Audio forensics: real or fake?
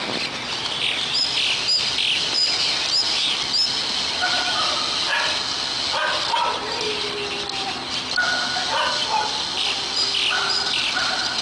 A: real